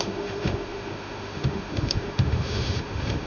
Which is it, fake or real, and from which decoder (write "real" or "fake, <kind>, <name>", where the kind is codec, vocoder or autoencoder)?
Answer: fake, autoencoder, DAC-VAE